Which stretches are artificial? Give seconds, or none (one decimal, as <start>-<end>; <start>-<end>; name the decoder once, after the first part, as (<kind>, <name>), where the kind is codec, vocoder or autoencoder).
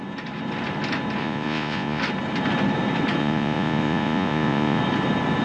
1.2-2.0 (vocoder, Vocos); 3.2-4.8